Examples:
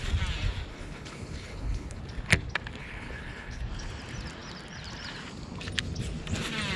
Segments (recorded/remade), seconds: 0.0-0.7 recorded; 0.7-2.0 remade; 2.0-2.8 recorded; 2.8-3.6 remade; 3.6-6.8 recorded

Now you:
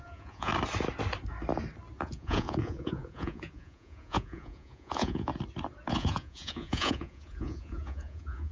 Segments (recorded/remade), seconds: 0.0-0.5 remade; 0.5-2.0 recorded; 2.0-5.3 remade; 5.3-5.9 recorded; 5.9-8.5 remade